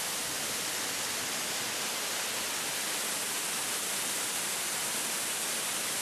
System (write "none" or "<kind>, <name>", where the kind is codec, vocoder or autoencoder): none